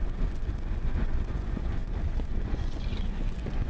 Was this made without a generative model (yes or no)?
no